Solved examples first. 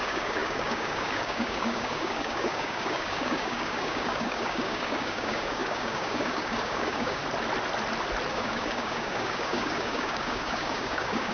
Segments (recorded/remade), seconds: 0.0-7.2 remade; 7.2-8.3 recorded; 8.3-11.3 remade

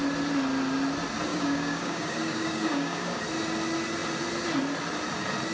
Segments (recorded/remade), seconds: 0.0-1.3 recorded; 1.3-3.2 remade; 3.2-5.5 recorded

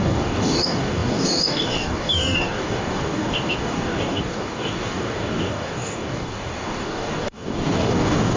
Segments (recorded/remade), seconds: 0.0-8.4 remade

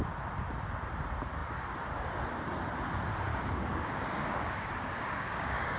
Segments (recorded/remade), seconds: 0.0-3.3 recorded; 3.3-5.8 remade

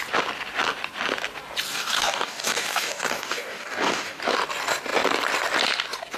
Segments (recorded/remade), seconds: 0.0-1.7 recorded; 1.7-4.2 remade; 4.2-6.2 recorded

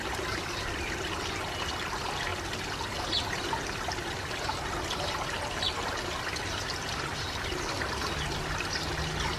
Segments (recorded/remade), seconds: 0.0-9.4 recorded